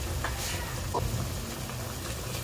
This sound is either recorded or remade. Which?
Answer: recorded